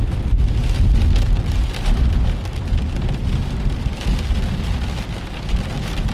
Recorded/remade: recorded